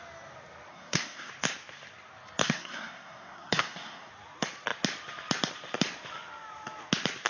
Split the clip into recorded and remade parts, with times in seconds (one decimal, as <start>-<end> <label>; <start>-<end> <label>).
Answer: 0.0-0.7 recorded; 0.7-1.3 remade; 1.3-2.4 recorded; 2.4-4.1 remade; 4.1-7.3 recorded